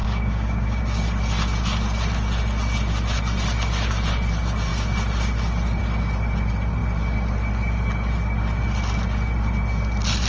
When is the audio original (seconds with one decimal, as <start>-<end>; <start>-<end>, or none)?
0.8-10.3